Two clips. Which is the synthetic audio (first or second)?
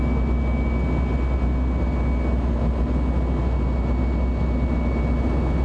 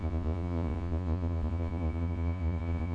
second